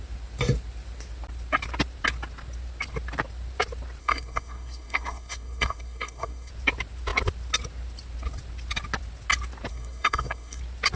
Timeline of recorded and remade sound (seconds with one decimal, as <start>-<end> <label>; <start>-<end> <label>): 0.0-4.0 recorded; 4.0-6.5 remade; 6.5-9.7 recorded; 9.7-10.6 remade; 10.6-11.0 recorded